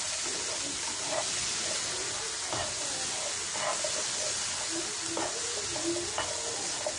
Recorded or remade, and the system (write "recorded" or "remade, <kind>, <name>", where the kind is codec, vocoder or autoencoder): recorded